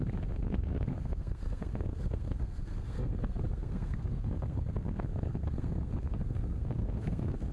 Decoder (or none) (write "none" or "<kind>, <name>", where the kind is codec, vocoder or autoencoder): codec, SNAC